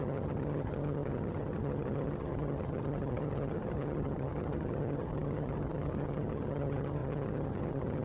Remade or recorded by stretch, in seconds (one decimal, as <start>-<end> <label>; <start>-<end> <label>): 0.0-8.0 remade